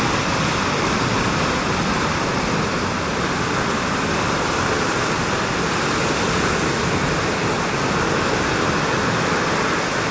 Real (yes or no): no